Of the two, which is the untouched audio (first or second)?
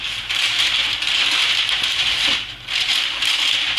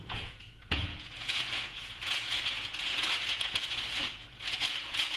first